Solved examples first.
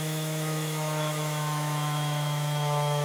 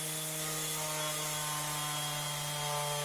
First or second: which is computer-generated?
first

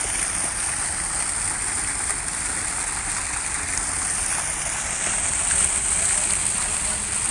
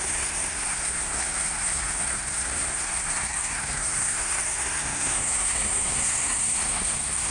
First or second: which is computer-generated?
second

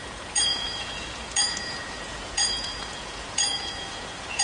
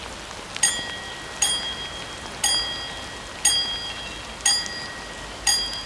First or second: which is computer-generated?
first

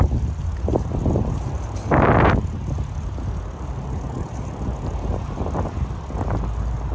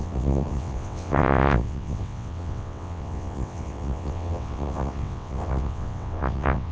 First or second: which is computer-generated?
second